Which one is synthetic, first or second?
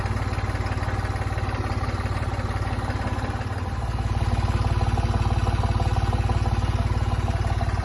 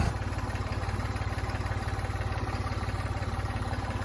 second